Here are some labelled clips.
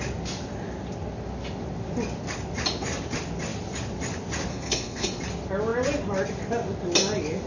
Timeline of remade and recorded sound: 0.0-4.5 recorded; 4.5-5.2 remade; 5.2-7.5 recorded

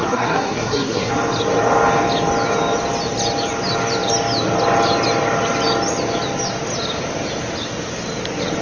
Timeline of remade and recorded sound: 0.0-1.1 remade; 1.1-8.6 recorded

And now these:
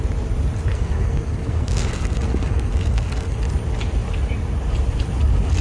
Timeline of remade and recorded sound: 0.0-0.7 recorded; 0.7-3.4 remade; 3.4-5.6 recorded

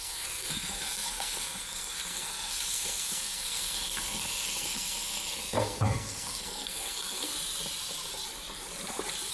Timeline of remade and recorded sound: 0.0-7.3 remade; 7.3-9.3 recorded